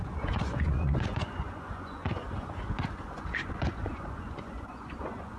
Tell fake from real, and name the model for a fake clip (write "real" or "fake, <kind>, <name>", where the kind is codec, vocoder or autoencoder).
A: fake, vocoder, Vocos